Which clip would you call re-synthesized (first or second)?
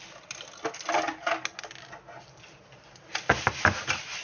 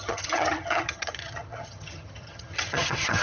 second